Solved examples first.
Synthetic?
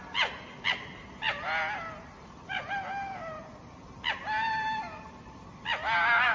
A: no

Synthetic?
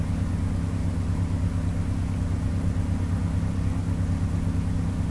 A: no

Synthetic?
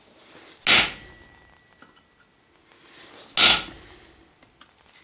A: no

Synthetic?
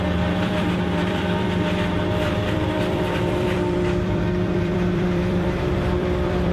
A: yes